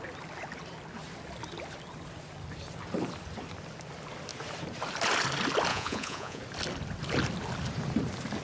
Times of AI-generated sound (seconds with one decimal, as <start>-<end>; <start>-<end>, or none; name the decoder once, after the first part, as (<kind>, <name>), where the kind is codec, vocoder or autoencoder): 5.7-6.4 (vocoder, Vocos)